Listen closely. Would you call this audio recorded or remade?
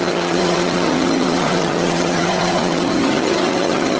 remade